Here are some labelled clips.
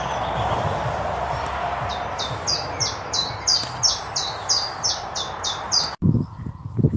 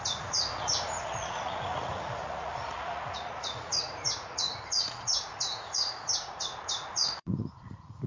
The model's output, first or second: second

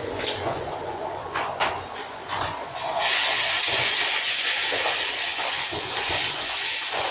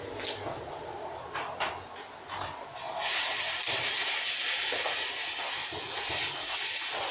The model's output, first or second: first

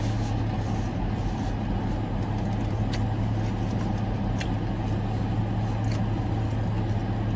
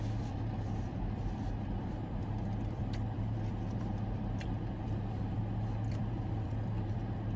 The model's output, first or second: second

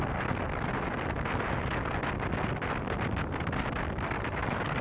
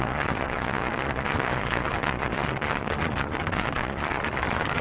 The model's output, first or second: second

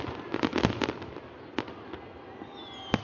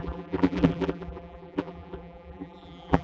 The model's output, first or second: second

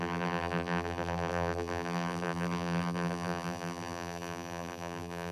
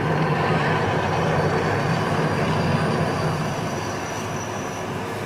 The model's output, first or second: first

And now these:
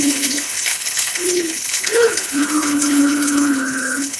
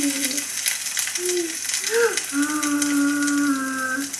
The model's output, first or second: first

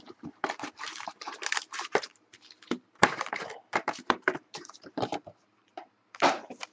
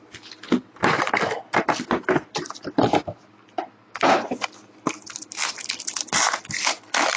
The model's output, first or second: first